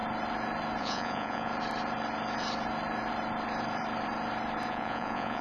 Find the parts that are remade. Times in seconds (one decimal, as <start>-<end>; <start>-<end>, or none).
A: 0.8-1.5; 4.7-5.4